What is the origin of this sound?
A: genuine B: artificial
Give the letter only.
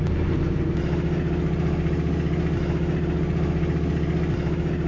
A